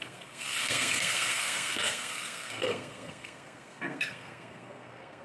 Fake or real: fake